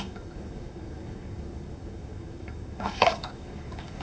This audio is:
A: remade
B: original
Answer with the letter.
A